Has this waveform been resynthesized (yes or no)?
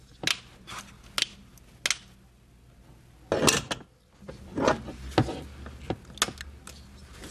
no